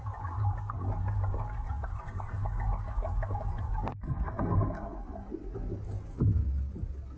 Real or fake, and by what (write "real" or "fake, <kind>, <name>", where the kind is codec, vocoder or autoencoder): real